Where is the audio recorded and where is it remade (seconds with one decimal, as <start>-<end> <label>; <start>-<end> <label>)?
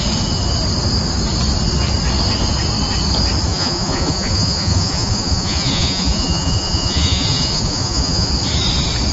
0.0-3.5 recorded; 3.5-8.3 remade; 8.3-9.1 recorded